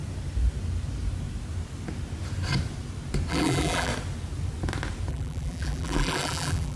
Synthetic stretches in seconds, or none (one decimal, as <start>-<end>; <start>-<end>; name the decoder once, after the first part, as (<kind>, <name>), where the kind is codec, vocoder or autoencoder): 3.3-3.9 (vocoder, BigVGAN v2); 5.1-6.8